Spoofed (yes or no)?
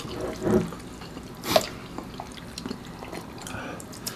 no